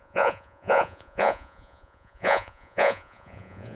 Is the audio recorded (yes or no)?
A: no